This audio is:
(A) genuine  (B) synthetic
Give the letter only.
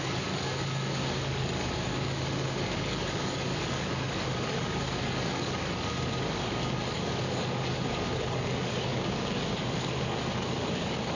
B